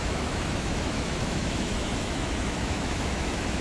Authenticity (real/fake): fake